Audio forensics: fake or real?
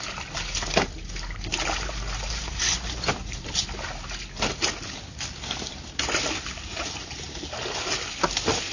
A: real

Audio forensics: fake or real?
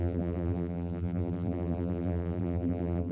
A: fake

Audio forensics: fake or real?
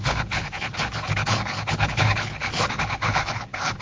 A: fake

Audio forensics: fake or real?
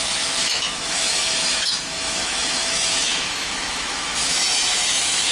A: fake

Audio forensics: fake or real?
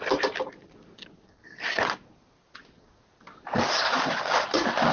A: real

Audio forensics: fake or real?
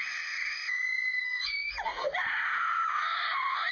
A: fake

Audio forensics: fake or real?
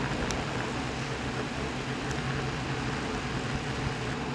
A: real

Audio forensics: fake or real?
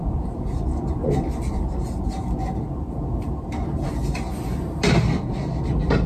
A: real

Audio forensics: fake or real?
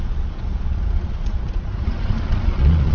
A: fake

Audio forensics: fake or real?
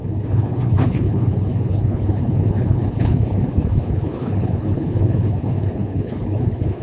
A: fake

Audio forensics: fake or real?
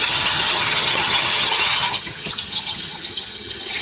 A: fake